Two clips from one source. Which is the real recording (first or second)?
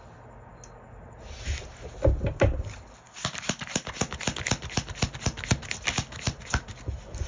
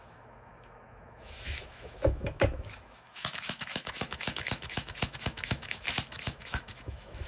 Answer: first